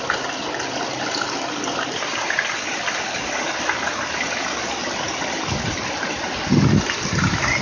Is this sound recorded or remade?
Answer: recorded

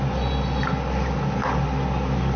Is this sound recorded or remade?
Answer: recorded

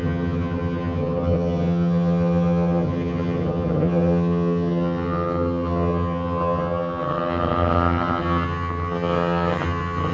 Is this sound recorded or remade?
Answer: remade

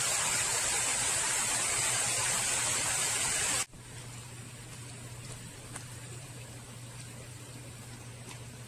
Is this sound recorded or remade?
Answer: recorded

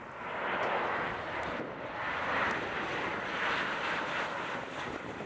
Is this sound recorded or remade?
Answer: recorded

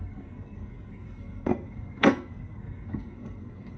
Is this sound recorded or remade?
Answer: remade